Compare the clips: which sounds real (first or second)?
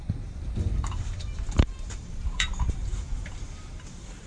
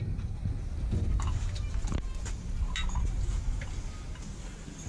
second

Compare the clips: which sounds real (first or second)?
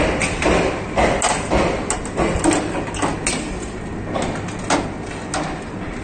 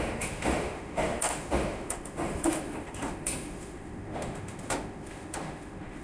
first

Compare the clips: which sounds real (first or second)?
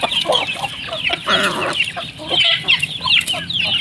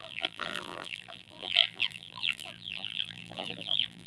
first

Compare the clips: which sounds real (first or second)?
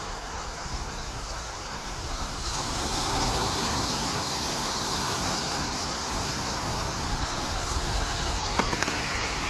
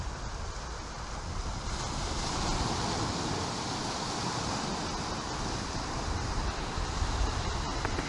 second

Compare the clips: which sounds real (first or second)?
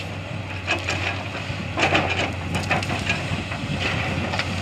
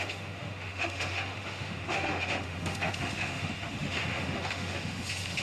first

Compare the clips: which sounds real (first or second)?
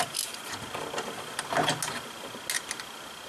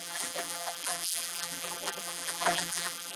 first